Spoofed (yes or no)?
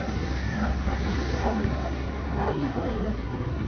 yes